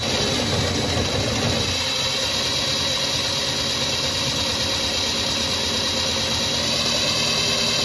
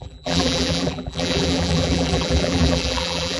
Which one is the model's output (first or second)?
second